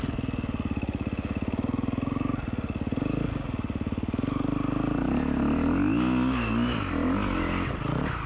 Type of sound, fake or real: real